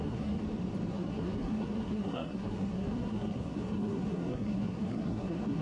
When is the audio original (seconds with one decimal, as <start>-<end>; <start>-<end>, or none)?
0.4-0.9